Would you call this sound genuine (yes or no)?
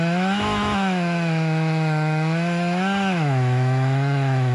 no